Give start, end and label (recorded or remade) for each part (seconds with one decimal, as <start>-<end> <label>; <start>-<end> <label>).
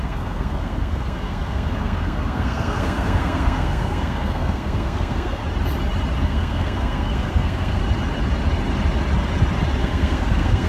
0.0-5.4 remade; 5.4-6.2 recorded; 6.2-7.8 remade; 7.8-9.8 recorded; 9.8-10.7 remade